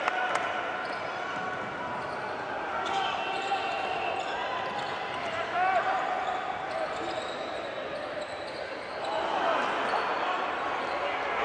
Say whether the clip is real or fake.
real